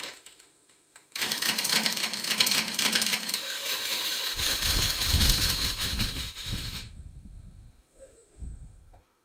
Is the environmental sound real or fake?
fake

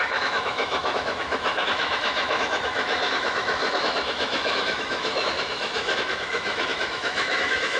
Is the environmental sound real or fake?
fake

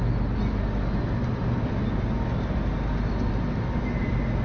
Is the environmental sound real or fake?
real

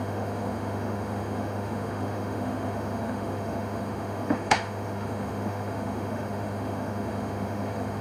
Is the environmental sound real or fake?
fake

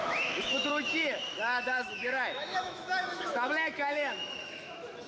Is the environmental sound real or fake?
fake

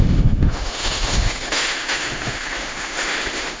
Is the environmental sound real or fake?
fake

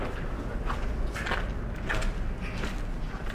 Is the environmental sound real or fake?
real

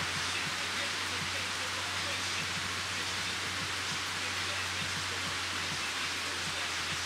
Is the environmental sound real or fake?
real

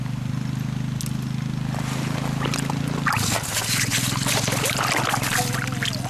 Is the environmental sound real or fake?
real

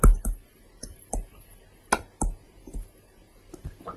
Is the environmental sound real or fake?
real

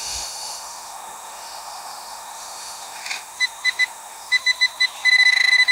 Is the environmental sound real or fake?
fake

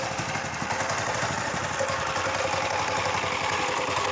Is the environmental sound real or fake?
real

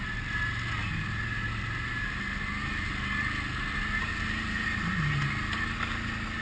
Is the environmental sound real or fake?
real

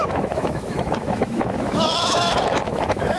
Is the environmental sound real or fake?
fake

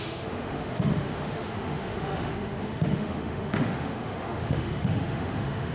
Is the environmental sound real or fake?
fake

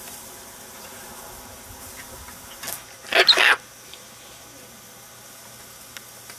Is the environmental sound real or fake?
real